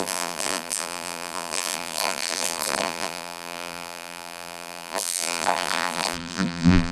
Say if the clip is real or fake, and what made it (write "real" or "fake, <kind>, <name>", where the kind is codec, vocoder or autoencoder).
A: fake, vocoder, BigVGAN v2